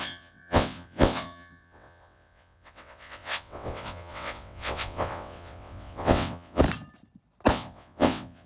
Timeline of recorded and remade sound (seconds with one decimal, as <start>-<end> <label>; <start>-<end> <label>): 0.0-6.6 remade; 6.6-7.5 recorded; 7.5-8.5 remade